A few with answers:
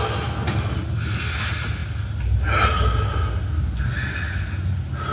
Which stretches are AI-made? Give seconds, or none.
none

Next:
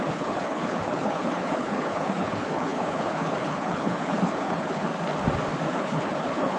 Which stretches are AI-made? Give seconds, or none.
0.0-4.9 (codec, HILCodec); 5.7-6.6

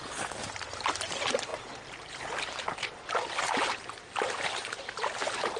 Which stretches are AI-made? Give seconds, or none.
none

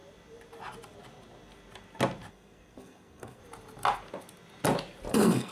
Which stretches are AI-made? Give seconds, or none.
2.3-3.4 (codec, SNAC); 5.1-5.5

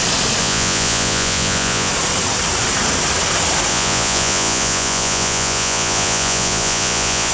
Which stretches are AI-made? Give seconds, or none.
0.4-1.9 (vocoder, Vocos); 3.7-7.3